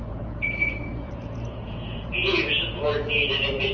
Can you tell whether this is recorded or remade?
remade